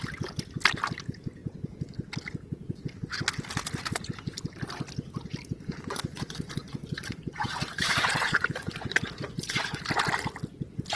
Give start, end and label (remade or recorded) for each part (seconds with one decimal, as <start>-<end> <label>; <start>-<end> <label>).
0.0-5.7 recorded; 5.7-9.8 remade; 9.8-11.0 recorded